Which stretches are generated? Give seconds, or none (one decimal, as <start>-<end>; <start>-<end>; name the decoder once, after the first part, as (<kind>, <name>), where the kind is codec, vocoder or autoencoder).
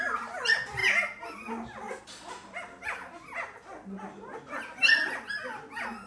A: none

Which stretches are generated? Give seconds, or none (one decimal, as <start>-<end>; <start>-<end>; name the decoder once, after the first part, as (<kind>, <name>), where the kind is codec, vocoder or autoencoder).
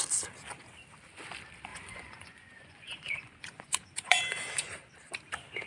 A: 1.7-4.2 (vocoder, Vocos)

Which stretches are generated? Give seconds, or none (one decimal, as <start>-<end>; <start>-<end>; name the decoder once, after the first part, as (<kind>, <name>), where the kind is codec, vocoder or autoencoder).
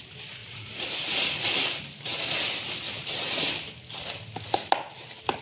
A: 0.4-0.9 (vocoder, Vocos)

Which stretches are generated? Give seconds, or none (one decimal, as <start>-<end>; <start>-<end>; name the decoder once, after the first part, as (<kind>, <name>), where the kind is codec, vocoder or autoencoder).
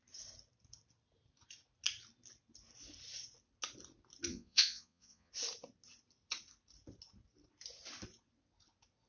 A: 4.3-5.3 (vocoder, Vocos)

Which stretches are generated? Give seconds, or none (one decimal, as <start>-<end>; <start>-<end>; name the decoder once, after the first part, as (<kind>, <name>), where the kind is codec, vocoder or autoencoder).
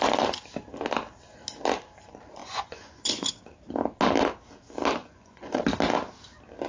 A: 2.4-3.3 (vocoder, Vocos); 5.0-5.6